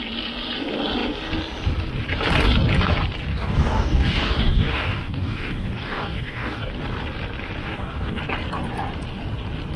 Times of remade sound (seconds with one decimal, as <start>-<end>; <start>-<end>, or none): 3.3-6.7; 7.6-8.2